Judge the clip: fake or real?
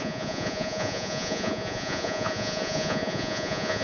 fake